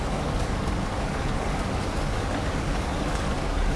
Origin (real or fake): fake